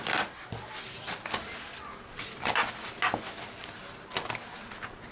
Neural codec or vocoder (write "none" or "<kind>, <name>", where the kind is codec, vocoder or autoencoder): none